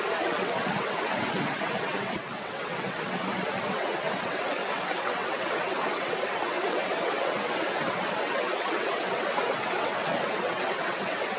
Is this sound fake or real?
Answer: fake